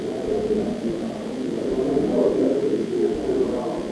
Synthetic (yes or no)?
yes